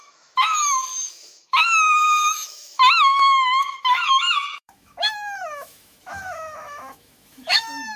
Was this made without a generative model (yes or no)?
no